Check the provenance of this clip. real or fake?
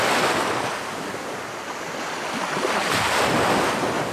real